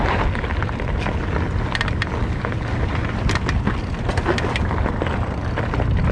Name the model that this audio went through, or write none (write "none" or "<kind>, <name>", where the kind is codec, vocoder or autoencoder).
none